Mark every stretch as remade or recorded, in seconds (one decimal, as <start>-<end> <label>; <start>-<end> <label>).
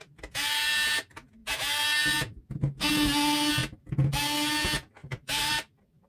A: 0.0-3.6 recorded; 3.6-4.2 remade; 4.2-5.0 recorded; 5.0-6.1 remade